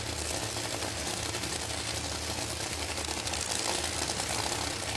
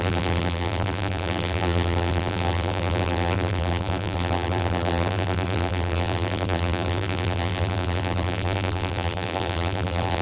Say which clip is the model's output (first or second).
second